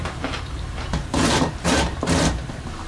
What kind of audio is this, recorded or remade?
remade